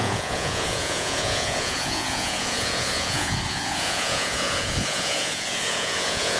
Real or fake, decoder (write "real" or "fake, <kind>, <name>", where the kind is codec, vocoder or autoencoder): fake, vocoder, Vocos